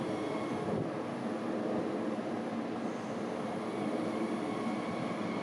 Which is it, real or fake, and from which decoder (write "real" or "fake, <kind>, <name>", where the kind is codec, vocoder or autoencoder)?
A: real